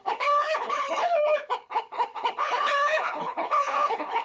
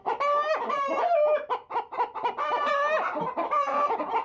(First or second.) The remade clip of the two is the first